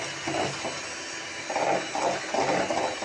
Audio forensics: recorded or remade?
recorded